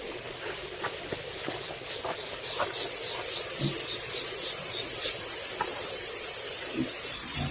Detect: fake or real fake